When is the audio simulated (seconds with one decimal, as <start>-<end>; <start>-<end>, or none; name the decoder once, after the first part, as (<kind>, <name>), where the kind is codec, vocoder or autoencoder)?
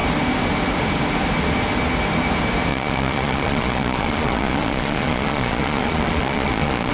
2.7-6.9 (vocoder, Vocos)